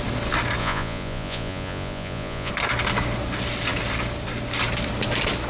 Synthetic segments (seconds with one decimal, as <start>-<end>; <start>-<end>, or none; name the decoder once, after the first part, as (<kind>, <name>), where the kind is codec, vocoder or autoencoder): 0.6-2.5 (vocoder, Vocos)